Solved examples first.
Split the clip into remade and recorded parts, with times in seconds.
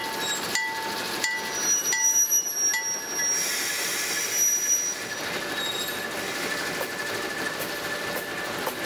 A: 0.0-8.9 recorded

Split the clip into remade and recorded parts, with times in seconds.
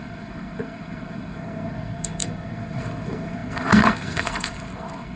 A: 0.0-5.2 remade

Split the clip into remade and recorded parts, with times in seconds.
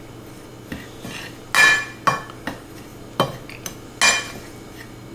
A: 0.0-5.1 recorded